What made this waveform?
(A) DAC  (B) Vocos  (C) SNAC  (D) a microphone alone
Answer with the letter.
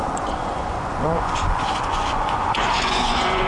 B